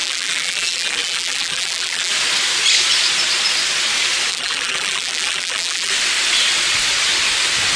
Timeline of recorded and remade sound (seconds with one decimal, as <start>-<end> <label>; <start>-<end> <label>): 0.0-2.1 remade; 2.1-4.3 recorded; 4.3-5.9 remade; 5.9-7.8 recorded